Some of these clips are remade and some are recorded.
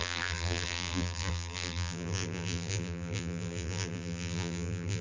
remade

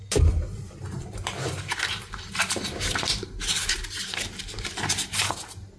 remade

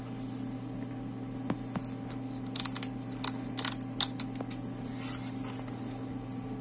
recorded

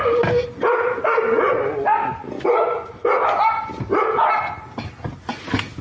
recorded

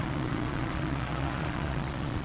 remade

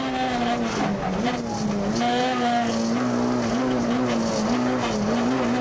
recorded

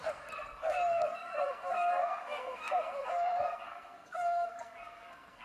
remade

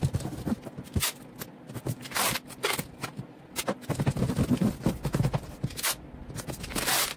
recorded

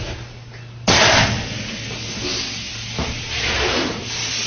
recorded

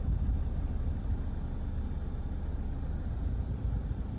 recorded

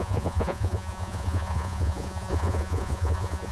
remade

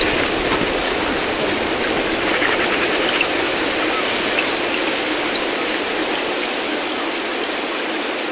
recorded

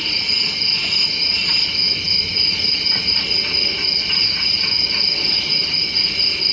recorded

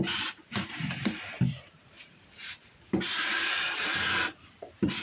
remade